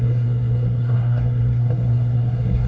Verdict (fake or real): fake